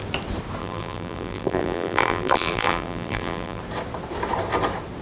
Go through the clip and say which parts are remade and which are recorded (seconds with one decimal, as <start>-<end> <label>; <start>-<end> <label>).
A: 0.0-0.6 recorded; 0.6-3.6 remade; 3.6-5.0 recorded

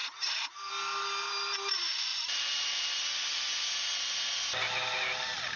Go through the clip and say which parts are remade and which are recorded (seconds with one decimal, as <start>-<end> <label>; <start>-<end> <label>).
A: 0.0-0.7 remade; 0.7-5.6 recorded

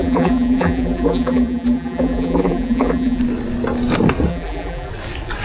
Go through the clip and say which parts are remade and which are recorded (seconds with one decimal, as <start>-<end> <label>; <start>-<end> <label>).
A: 0.0-3.2 remade; 3.2-4.3 recorded; 4.3-4.9 remade; 4.9-5.4 recorded

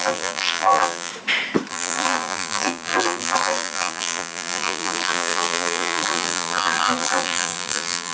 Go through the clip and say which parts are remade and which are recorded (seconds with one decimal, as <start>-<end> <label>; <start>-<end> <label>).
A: 0.0-1.1 remade; 1.1-1.7 recorded; 1.7-8.1 remade

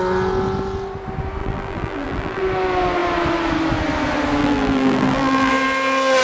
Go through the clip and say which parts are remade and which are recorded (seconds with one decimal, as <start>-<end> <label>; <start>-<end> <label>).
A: 0.0-1.4 recorded; 1.4-2.4 remade; 2.4-4.4 recorded; 4.4-5.5 remade; 5.5-6.2 recorded

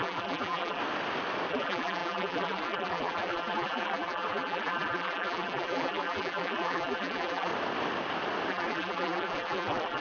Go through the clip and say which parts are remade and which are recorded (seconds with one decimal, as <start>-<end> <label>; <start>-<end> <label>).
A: 0.0-0.8 remade; 0.8-1.5 recorded; 1.5-7.5 remade; 7.5-8.5 recorded; 8.5-10.0 remade

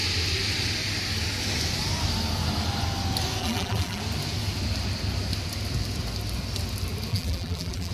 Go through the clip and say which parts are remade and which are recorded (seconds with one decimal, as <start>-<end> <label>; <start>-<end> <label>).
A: 0.0-3.4 recorded; 3.4-4.0 remade; 4.0-7.1 recorded; 7.1-7.9 remade

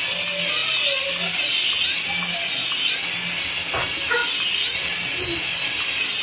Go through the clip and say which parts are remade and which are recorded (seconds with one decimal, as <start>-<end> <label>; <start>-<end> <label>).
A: 0.0-4.2 recorded; 4.2-4.9 remade; 4.9-6.2 recorded